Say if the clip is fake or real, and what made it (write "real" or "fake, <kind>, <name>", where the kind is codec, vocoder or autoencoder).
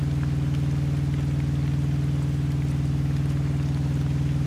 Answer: real